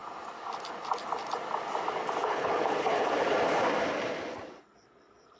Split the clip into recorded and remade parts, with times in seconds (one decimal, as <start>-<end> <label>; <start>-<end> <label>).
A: 0.0-2.2 recorded; 2.2-3.1 remade; 3.1-5.4 recorded